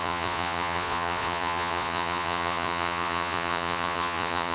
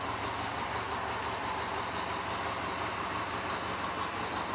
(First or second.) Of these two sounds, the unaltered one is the second